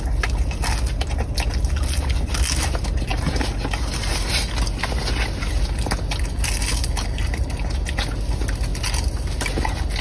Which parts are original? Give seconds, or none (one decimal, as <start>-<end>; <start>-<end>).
0.0-10.0